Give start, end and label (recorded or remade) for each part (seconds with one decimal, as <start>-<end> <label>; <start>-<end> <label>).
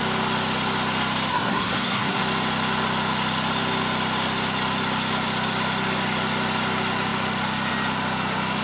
0.0-1.3 recorded; 1.3-2.2 remade; 2.2-8.6 recorded